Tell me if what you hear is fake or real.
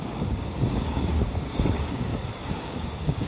fake